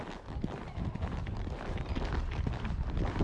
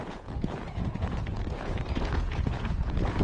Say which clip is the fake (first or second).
second